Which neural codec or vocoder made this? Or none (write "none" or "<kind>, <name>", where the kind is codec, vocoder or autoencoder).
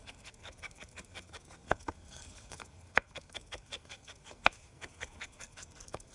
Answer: codec, SNAC